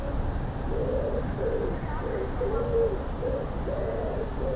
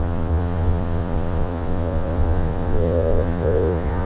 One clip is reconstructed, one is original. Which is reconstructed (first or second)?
second